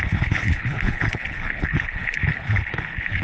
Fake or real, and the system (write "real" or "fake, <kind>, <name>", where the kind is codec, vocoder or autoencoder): fake, codec, HILCodec